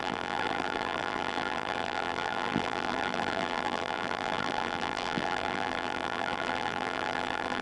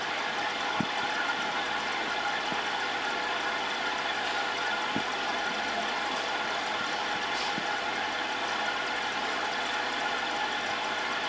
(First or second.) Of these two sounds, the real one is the second